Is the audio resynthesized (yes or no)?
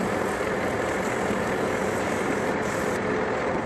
no